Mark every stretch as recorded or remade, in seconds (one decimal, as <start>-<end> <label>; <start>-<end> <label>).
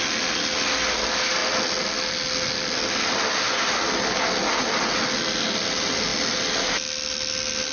0.0-7.7 recorded